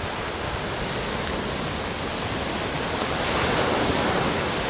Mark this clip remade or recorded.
recorded